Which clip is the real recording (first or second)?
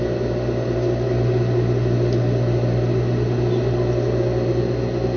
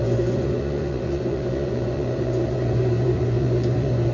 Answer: first